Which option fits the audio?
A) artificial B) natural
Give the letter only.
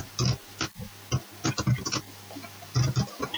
B